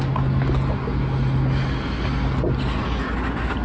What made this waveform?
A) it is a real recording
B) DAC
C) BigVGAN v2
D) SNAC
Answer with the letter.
A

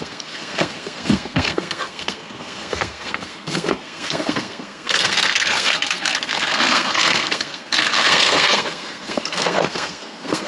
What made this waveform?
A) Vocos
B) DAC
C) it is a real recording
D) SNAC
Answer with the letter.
D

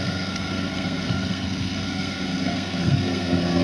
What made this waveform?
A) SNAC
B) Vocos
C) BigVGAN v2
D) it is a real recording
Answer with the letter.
A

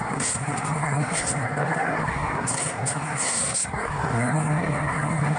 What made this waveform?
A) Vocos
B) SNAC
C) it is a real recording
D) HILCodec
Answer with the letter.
B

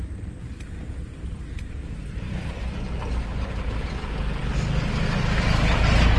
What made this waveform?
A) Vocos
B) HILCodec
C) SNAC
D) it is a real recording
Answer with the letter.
D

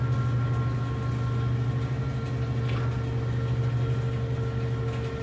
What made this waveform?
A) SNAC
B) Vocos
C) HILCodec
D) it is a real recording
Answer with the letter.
D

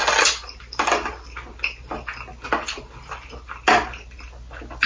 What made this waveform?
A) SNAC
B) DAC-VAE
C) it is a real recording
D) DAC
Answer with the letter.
C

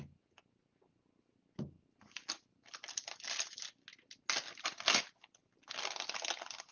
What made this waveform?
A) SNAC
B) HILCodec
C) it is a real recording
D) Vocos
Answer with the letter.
C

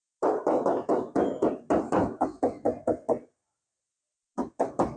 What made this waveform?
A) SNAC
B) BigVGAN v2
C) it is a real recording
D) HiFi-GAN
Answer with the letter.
C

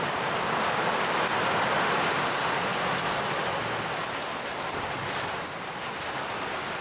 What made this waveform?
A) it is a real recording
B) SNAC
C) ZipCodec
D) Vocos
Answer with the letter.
A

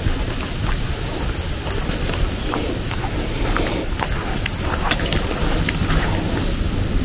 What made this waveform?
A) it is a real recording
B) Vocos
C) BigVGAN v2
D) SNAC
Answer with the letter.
A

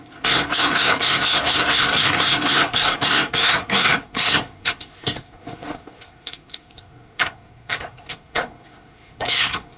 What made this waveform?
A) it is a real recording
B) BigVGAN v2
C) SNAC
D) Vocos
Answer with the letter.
C